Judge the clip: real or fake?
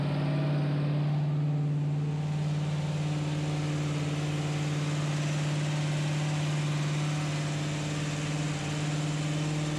real